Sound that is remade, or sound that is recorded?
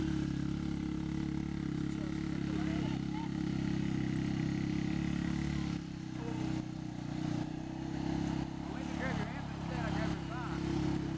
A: recorded